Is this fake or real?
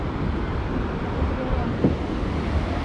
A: real